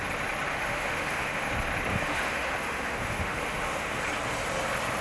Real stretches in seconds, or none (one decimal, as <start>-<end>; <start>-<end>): 0.0-0.5; 1.5-1.9; 4.0-5.0